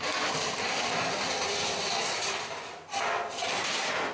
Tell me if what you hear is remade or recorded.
recorded